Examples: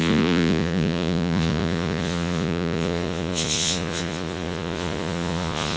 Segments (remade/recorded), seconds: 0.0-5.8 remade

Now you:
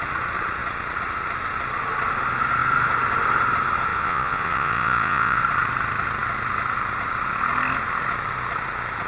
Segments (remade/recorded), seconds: 0.0-3.9 recorded; 3.9-5.4 remade; 5.4-9.1 recorded